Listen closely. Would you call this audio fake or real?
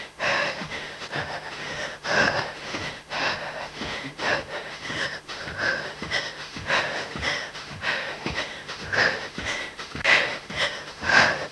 fake